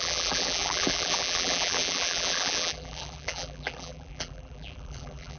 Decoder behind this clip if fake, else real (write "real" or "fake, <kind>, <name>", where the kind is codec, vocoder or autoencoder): fake, vocoder, BigVGAN v2